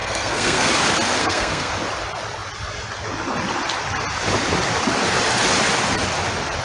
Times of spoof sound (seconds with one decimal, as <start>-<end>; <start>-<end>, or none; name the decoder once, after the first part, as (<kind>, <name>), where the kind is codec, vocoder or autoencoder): 0.0-0.7 (codec, SNAC); 1.2-1.7